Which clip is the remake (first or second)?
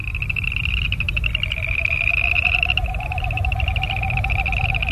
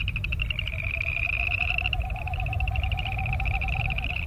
second